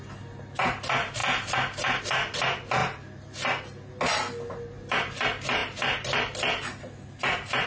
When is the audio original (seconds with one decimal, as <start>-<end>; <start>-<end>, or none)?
0.0-7.7